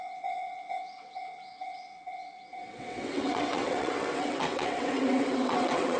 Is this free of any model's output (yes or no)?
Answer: no